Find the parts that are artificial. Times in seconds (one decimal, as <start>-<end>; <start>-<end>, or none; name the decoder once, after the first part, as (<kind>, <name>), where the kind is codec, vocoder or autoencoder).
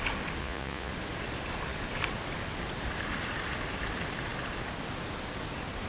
0.4-0.9 (vocoder, Vocos)